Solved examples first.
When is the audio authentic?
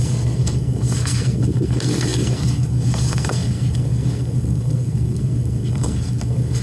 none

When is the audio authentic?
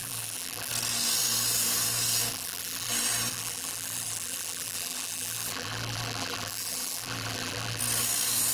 0.7-2.3; 2.9-3.3; 7.8-8.5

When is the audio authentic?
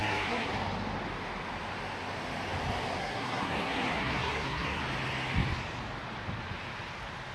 0.5-3.0; 4.8-7.3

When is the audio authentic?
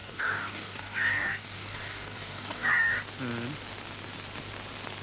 3.0-5.0